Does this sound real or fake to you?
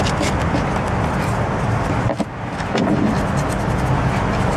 real